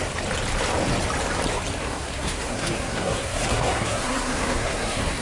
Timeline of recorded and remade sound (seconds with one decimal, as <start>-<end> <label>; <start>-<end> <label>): 0.0-1.8 recorded; 1.8-5.2 remade